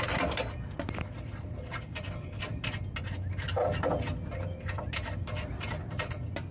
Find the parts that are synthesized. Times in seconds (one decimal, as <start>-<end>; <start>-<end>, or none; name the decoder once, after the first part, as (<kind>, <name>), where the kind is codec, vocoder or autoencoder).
none